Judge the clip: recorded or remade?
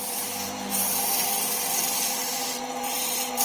remade